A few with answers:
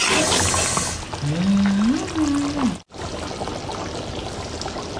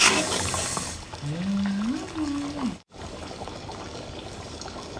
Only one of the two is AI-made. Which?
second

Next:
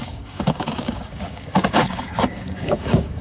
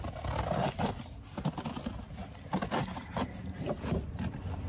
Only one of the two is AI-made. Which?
first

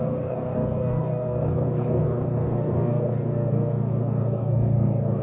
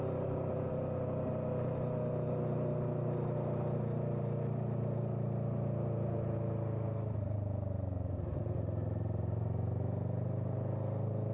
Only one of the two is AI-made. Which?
first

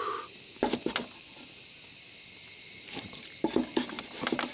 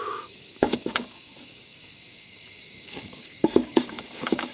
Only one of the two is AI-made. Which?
second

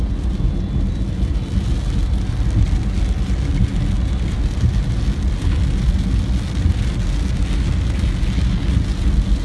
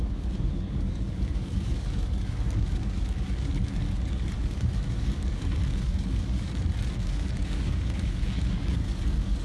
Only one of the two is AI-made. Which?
second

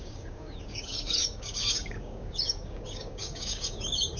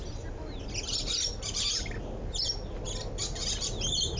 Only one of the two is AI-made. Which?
first